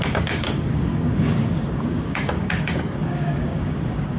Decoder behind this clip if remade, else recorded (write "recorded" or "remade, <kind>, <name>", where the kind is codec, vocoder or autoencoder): remade, codec, DAC